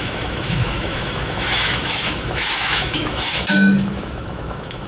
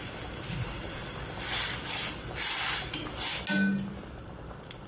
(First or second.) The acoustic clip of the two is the second